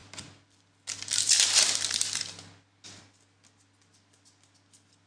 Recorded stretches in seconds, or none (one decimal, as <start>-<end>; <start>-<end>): 3.0-5.1